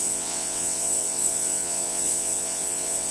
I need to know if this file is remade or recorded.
remade